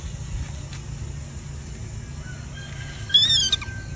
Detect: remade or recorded recorded